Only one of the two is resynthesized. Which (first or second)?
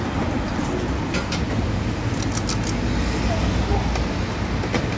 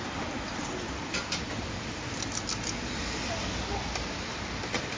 second